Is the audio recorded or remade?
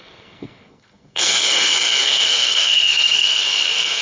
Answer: remade